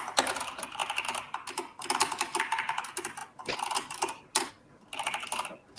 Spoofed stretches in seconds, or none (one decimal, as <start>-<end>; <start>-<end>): none